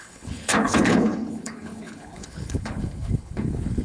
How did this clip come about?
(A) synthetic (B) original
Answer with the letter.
A